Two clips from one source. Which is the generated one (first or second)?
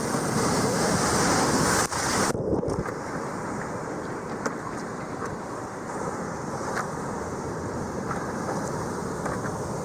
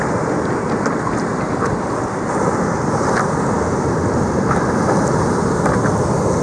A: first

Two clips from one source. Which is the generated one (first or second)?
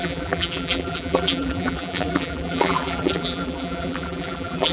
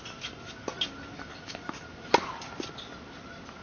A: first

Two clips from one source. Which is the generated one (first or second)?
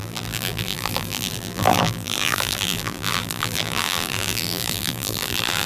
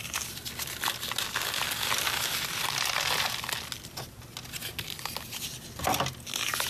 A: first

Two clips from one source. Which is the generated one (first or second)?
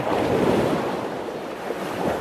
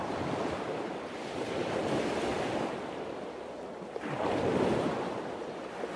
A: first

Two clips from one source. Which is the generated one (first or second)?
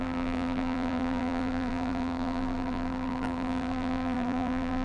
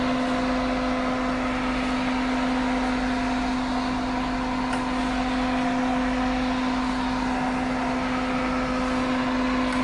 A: first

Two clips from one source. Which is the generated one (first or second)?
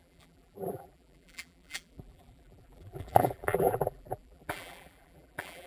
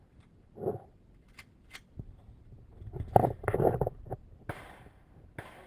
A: first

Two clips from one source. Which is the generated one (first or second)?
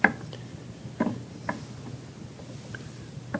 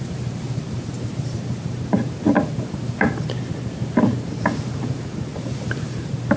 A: second